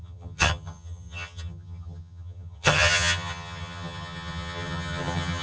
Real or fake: fake